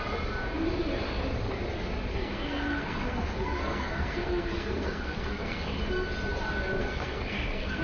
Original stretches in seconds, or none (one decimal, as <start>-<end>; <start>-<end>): 0.0-2.1; 5.8-6.8